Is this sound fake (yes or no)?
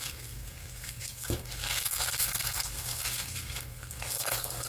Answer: yes